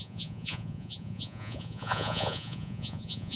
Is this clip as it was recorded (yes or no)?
no